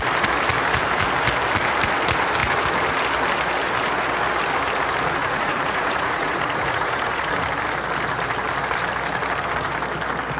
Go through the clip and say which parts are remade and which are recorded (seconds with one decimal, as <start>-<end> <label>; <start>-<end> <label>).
0.0-5.2 recorded; 5.2-7.3 remade; 7.3-10.4 recorded